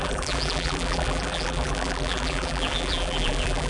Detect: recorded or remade remade